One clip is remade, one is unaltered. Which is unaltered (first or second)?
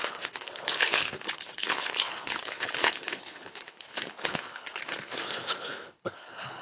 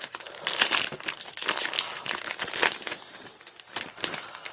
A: second